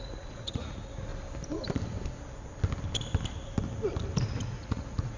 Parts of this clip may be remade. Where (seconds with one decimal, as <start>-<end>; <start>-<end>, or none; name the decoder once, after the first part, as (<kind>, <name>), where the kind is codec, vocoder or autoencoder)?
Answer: 0.0-1.1 (vocoder, Vocos); 4.2-5.2